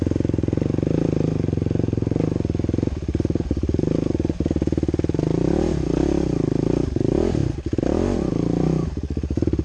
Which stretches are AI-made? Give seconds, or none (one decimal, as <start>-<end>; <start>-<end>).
none